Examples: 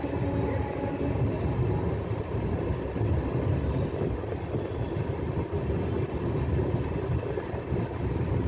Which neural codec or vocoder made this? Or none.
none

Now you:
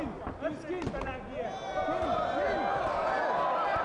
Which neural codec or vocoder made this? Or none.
none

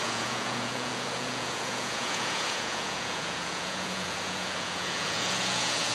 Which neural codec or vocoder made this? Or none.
vocoder, Vocos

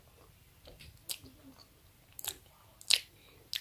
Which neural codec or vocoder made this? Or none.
none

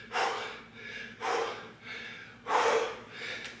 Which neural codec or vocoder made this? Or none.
none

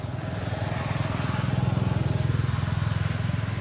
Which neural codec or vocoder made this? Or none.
none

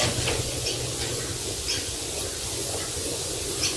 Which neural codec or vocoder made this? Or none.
vocoder, Vocos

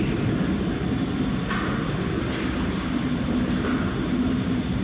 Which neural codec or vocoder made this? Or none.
none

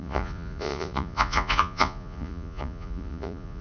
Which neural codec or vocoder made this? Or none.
vocoder, Vocos